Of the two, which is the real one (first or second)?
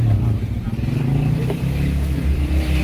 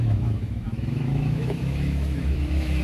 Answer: first